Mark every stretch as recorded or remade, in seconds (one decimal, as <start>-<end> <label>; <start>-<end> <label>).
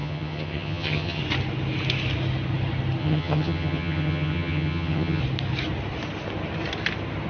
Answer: 0.0-1.2 remade; 1.2-3.0 recorded; 3.0-5.2 remade; 5.2-7.3 recorded